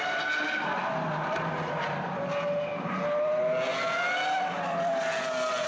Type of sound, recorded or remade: recorded